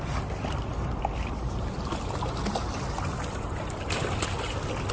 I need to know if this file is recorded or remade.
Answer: recorded